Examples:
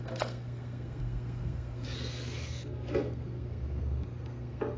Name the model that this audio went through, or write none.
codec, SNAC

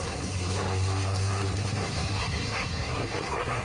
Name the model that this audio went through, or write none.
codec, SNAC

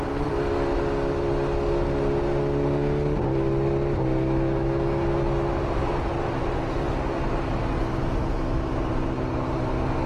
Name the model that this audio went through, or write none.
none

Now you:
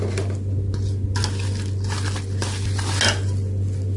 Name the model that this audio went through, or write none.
none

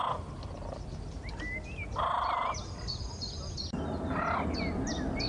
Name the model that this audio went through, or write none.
none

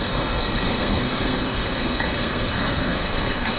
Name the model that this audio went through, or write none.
codec, SNAC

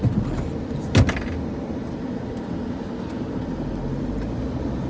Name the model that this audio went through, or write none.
none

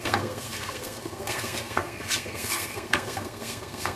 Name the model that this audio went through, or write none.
codec, SNAC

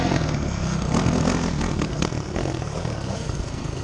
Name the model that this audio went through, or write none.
codec, SNAC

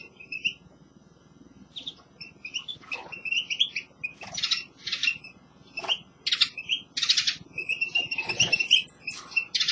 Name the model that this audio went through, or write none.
none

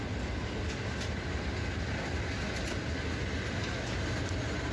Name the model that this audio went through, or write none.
none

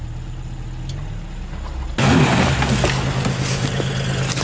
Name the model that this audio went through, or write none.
none